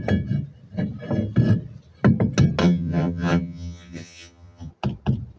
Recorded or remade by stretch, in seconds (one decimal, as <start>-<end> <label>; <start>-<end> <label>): 0.0-2.6 recorded; 2.6-4.7 remade; 4.7-5.4 recorded